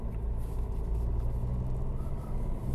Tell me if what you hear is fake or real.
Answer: real